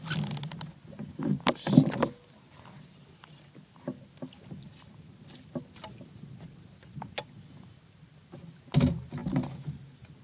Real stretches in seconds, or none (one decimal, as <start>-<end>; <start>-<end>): 0.0-10.2